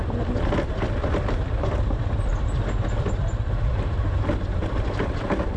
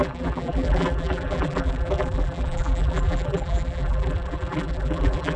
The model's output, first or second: second